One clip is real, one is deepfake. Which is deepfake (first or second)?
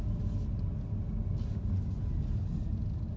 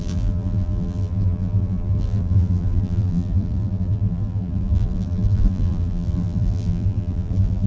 second